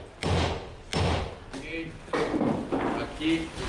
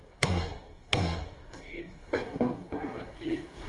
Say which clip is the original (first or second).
first